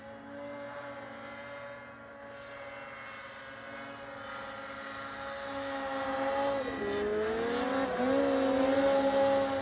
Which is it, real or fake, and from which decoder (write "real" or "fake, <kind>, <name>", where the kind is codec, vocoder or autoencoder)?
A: real